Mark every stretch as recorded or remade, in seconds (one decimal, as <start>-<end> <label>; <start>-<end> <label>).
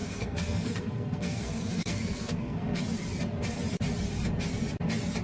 0.0-2.8 remade; 2.8-5.2 recorded